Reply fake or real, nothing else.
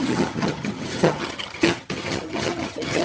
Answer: fake